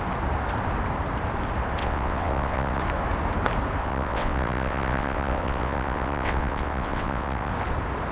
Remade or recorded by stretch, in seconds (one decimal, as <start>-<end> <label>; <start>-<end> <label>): 0.0-1.8 recorded; 1.8-2.8 remade; 2.8-3.8 recorded; 3.8-7.5 remade; 7.5-8.1 recorded

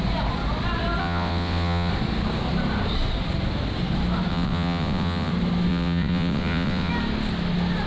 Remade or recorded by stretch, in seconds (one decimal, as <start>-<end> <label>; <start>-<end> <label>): 0.0-1.0 recorded; 1.0-1.9 remade; 1.9-4.3 recorded; 4.3-5.3 remade; 5.3-5.7 recorded; 5.7-6.9 remade; 6.9-7.9 recorded

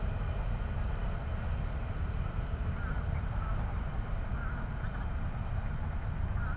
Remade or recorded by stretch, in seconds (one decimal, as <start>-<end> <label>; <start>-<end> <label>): 0.0-6.6 recorded

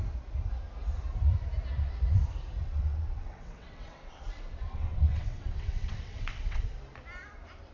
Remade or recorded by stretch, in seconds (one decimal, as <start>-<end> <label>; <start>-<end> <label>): 0.0-2.6 recorded; 2.6-6.6 remade; 6.6-7.7 recorded